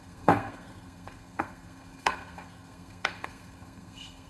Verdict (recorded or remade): remade